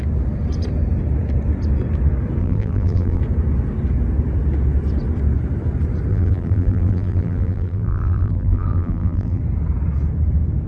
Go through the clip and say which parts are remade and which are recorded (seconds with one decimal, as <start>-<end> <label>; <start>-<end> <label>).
0.0-2.4 recorded; 2.4-3.2 remade; 3.2-6.1 recorded; 6.1-9.4 remade; 9.4-10.7 recorded